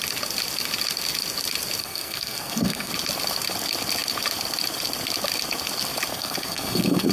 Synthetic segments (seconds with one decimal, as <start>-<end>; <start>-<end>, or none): 1.8-2.9; 6.1-7.1